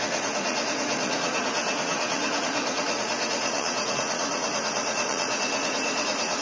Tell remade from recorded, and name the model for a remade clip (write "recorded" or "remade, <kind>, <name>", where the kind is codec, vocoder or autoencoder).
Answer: remade, vocoder, Vocos